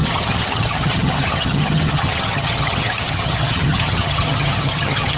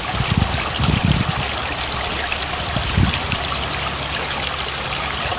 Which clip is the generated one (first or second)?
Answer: first